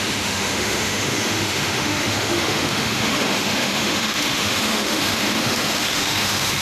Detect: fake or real fake